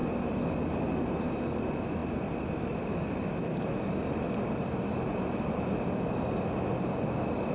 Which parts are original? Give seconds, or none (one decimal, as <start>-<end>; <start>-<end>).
0.0-7.5